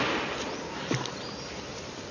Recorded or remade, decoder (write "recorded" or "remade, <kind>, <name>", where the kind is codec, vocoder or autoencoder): recorded